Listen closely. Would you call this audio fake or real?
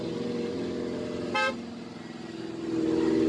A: real